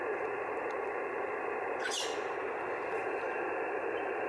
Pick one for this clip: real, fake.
fake